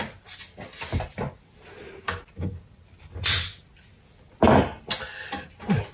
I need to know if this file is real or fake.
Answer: real